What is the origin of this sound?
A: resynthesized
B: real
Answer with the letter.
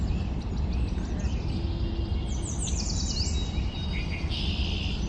B